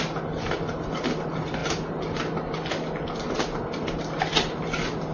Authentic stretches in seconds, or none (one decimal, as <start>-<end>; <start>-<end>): 0.0-5.1